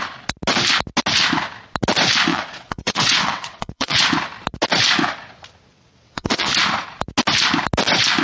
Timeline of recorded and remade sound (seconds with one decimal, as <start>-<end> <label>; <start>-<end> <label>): 0.0-2.3 recorded; 2.3-4.0 remade; 4.0-5.7 recorded; 5.7-6.5 remade; 6.5-8.2 recorded